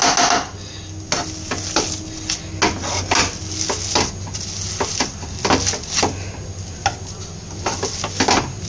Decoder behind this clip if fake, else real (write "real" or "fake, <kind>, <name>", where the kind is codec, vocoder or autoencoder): real